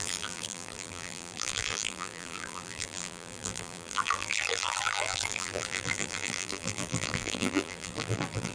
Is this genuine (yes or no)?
no